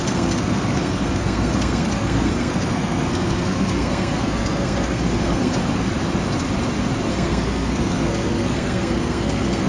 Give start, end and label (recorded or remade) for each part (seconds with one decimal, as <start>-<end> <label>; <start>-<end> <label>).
0.0-5.6 remade; 5.6-7.1 recorded; 7.1-9.7 remade